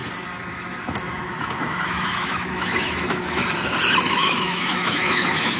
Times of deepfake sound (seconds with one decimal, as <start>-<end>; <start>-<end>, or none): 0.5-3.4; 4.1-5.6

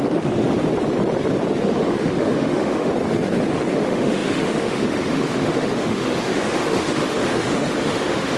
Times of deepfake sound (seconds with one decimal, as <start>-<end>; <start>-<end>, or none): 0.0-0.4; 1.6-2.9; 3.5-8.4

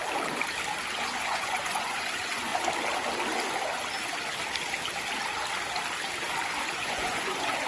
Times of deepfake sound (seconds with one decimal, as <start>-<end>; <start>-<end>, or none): 1.0-2.5; 6.6-7.7